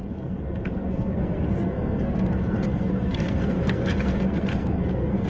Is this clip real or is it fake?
fake